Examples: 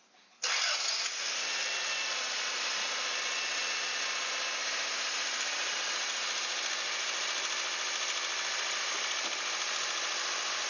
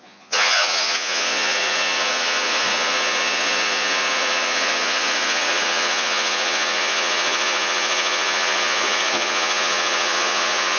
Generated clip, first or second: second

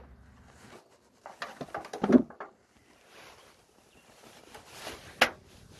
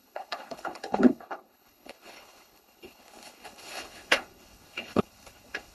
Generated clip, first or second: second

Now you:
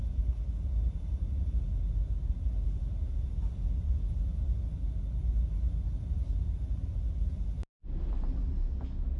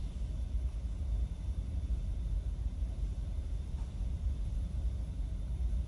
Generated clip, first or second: second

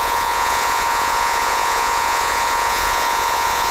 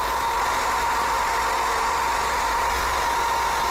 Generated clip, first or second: first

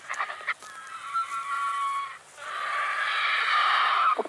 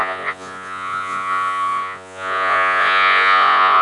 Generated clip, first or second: second